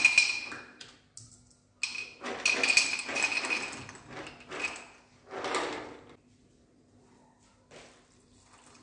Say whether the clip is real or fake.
real